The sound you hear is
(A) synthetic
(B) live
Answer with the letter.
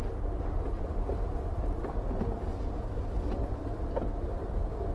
B